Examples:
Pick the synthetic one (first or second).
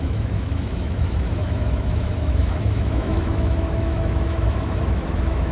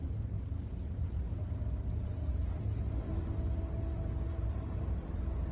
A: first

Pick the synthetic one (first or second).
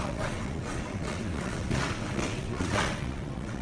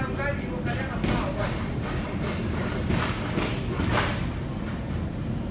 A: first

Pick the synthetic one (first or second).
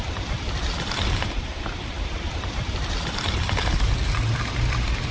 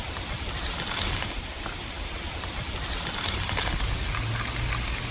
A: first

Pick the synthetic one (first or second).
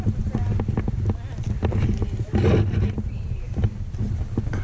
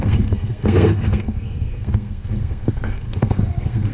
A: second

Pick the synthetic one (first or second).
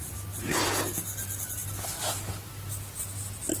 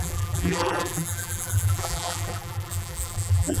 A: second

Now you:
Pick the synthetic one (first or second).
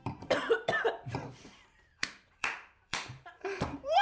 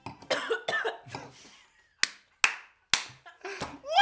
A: first